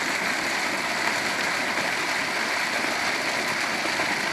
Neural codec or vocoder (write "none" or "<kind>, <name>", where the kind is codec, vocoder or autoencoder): none